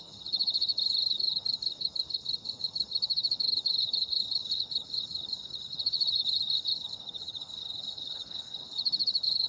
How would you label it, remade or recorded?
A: remade